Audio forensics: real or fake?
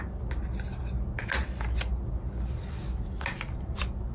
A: real